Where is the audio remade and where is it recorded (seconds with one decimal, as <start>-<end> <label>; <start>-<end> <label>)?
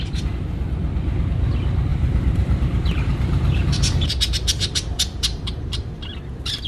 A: 0.0-1.9 recorded; 1.9-5.9 remade; 5.9-6.7 recorded